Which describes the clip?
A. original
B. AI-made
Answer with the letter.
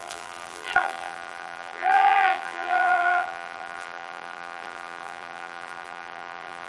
B